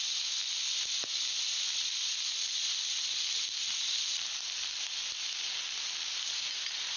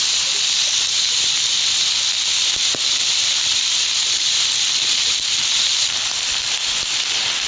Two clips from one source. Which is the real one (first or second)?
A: first